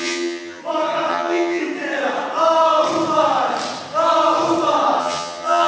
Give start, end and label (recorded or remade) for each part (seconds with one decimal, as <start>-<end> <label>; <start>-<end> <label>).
0.0-0.6 remade; 0.6-1.1 recorded; 1.1-1.6 remade; 1.6-5.0 recorded; 5.0-5.7 remade